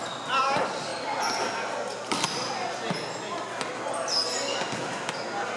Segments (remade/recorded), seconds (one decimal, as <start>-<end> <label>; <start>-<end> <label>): 0.0-5.6 recorded